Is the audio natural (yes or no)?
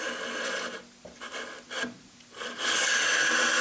yes